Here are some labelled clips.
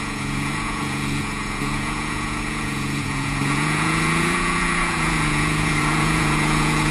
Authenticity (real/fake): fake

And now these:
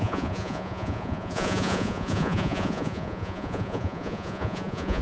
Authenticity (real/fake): fake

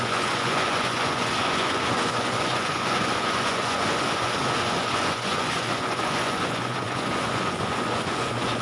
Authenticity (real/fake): fake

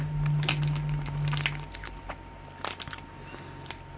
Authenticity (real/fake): real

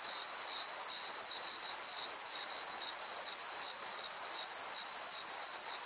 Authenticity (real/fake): real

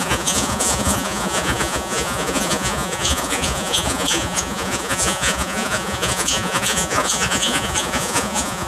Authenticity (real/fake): fake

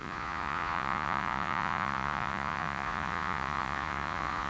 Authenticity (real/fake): fake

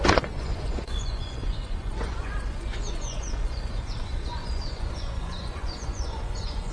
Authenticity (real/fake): fake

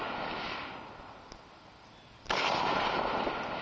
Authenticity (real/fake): real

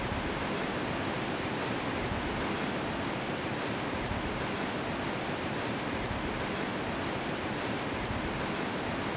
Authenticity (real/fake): real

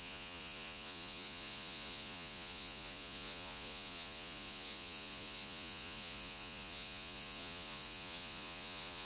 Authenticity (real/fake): fake